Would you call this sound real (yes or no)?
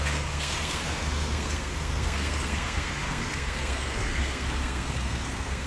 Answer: no